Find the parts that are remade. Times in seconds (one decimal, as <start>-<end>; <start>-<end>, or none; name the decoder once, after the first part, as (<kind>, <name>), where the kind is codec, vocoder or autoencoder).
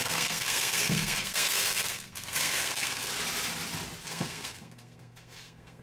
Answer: 0.0-3.1 (codec, SNAC); 4.0-5.8